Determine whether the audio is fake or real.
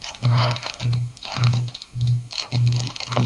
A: fake